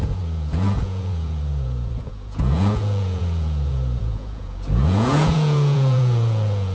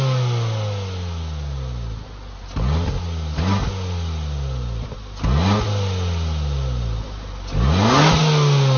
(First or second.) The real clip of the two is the second